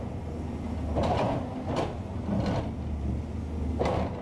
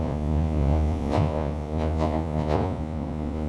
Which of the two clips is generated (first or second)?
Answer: second